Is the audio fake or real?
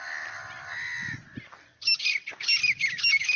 real